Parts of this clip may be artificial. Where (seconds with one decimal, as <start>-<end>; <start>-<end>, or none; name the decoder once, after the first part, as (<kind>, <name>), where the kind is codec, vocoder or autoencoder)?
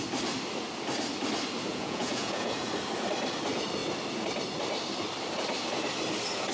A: 1.7-2.7 (vocoder, Vocos)